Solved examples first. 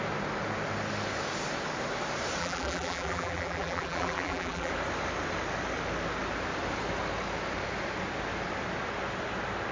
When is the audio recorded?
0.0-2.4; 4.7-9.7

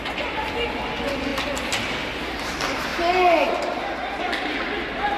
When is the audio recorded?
1.3-2.4; 2.9-4.2

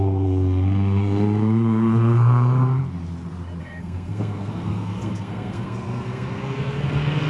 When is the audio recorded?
2.8-3.6

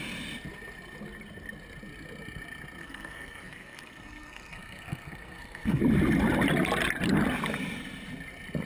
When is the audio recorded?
0.0-2.8; 5.8-8.7

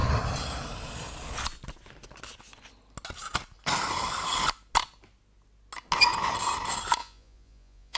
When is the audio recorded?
0.0-7.0